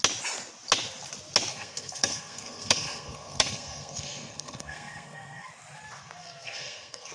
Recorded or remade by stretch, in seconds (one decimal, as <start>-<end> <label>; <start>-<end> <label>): 0.0-1.5 recorded; 1.5-5.5 remade; 5.5-6.2 recorded; 6.2-7.1 remade